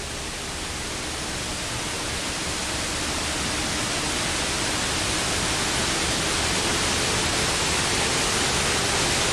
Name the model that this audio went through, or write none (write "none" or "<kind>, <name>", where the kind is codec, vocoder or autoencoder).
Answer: none